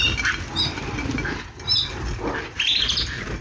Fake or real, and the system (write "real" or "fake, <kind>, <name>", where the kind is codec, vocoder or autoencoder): real